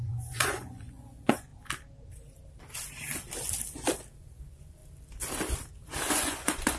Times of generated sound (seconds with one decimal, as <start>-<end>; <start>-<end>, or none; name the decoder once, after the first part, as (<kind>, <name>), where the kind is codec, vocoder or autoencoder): 0.0-1.5 (vocoder, Vocos); 4.2-4.8; 6.1-6.8